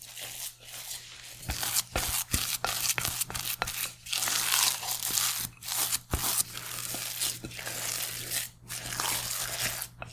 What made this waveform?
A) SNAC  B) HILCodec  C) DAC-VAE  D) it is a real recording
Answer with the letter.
D